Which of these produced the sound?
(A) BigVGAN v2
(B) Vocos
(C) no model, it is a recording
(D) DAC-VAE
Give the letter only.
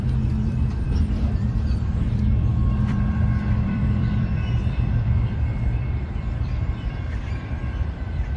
A